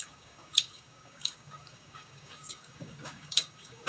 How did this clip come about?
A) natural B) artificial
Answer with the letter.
B